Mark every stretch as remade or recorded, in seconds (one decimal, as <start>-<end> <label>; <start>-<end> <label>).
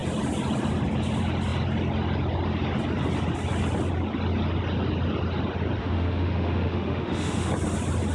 0.0-5.8 recorded; 5.8-7.5 remade; 7.5-8.1 recorded